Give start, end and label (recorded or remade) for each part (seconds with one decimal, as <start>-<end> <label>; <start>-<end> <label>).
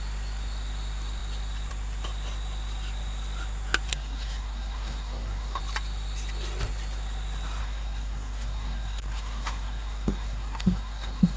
0.0-3.9 recorded; 3.9-5.6 remade; 5.6-7.6 recorded; 7.6-11.4 remade